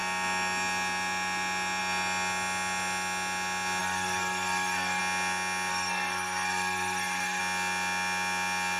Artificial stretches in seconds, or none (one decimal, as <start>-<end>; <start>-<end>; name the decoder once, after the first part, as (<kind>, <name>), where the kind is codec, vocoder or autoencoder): 3.8-5.0 (codec, SNAC); 5.7-7.4